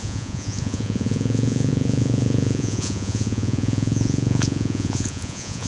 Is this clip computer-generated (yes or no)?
yes